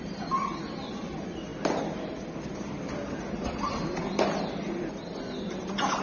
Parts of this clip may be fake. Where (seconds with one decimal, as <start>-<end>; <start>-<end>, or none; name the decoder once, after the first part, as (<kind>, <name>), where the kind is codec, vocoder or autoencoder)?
none